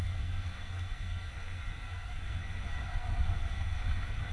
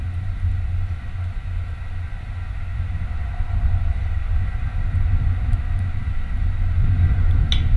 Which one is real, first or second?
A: second